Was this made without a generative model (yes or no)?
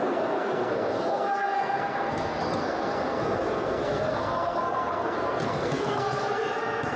no